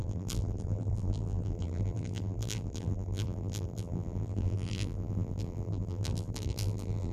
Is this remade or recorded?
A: remade